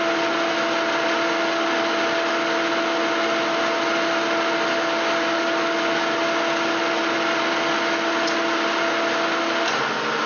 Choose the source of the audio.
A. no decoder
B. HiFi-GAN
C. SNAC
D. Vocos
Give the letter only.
A